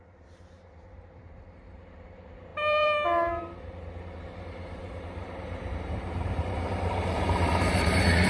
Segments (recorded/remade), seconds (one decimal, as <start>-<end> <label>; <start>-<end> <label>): 0.0-8.3 remade